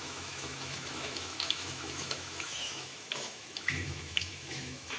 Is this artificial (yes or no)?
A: yes